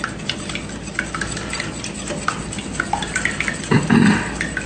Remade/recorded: remade